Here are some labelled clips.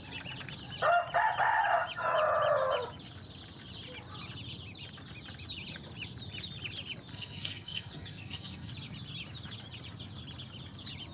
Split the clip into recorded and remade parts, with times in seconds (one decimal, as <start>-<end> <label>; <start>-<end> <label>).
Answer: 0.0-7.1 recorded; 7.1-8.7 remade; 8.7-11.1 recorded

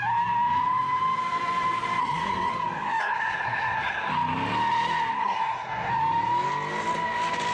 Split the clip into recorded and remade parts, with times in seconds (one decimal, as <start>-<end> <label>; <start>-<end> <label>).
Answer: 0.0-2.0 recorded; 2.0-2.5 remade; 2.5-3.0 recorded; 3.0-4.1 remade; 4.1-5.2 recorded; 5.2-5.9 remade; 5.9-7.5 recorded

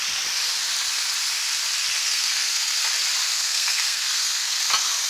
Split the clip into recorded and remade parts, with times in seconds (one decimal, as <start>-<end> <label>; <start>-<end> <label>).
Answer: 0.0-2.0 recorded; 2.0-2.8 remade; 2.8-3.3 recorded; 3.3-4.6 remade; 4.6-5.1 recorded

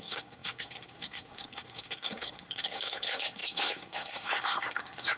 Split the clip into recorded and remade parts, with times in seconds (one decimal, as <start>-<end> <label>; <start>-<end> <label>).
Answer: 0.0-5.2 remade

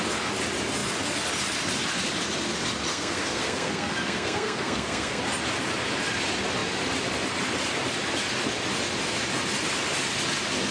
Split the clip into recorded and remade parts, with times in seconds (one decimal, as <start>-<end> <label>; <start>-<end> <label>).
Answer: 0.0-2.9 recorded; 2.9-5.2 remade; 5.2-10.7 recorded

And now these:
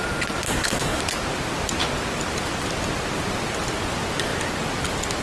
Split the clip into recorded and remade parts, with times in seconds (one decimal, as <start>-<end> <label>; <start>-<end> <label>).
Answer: 0.0-0.5 recorded; 0.5-1.0 remade; 1.0-5.2 recorded

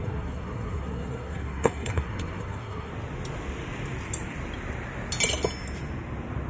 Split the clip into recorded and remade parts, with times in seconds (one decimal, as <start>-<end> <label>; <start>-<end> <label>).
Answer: 0.0-2.9 remade; 2.9-6.5 recorded